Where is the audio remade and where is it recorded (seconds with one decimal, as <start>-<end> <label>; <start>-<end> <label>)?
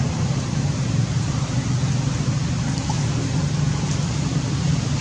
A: 0.0-5.0 recorded